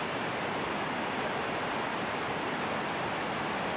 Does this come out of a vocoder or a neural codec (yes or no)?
no